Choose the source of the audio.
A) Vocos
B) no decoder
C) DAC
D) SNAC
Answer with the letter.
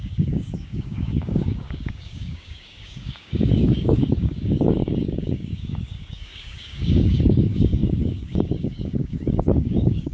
C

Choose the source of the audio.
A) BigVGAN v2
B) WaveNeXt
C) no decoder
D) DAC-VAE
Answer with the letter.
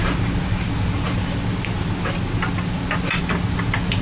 C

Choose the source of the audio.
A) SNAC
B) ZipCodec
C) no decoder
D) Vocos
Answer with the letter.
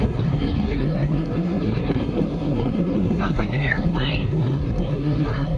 A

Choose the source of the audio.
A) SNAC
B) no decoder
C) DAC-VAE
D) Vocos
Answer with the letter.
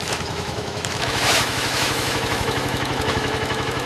C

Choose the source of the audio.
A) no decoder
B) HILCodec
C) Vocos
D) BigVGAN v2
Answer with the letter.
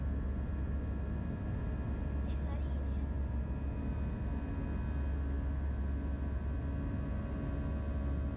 A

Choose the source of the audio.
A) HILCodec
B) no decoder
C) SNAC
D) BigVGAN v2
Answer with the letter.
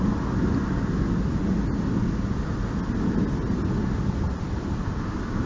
B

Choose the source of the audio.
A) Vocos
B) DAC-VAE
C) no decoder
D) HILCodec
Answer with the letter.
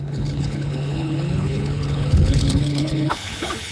D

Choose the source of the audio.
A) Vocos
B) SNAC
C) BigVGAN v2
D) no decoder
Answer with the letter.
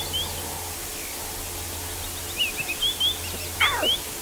D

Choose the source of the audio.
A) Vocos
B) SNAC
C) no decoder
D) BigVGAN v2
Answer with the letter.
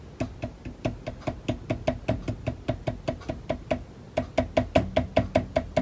C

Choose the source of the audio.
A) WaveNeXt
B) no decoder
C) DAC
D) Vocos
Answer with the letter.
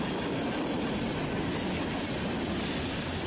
B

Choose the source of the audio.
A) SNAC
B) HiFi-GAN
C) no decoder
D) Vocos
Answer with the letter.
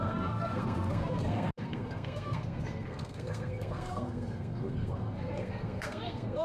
A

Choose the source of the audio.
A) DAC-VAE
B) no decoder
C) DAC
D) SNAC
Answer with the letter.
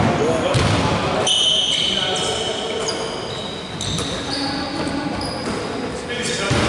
B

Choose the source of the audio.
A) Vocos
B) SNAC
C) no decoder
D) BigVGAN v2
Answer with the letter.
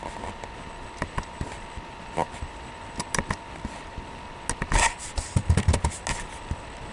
C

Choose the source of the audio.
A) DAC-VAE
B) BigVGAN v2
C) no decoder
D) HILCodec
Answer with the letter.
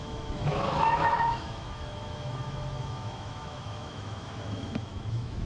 A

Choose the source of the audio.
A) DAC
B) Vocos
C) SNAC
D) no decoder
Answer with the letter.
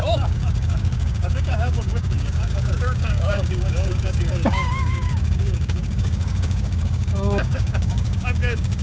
A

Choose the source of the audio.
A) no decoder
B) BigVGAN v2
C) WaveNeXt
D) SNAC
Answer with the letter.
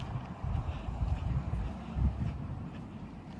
B